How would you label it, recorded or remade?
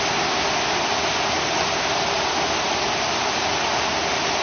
recorded